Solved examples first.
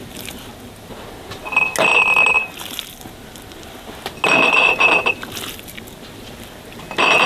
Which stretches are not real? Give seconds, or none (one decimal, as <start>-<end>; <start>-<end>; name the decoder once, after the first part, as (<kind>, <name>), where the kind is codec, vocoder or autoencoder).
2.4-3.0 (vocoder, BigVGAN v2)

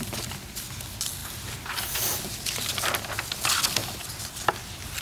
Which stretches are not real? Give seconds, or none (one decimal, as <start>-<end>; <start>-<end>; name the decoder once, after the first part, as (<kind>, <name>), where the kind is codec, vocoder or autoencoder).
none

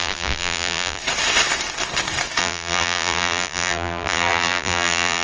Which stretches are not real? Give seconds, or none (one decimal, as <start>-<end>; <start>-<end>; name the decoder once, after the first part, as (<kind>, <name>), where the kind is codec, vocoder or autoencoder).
0.0-1.0 (vocoder, BigVGAN v2); 2.4-5.2